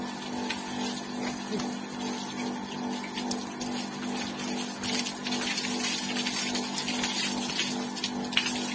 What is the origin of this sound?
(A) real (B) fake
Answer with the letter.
A